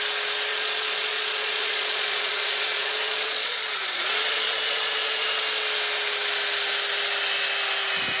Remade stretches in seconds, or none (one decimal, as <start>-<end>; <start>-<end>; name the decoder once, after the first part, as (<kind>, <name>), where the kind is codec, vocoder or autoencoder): 0.5-5.4 (vocoder, Vocos)